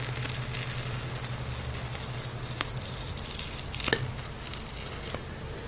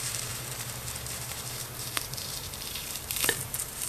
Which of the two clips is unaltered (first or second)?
first